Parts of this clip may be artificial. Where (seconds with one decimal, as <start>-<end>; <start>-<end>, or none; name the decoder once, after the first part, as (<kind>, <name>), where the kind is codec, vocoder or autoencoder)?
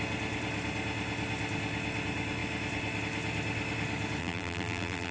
4.2-5.1 (vocoder, BigVGAN v2)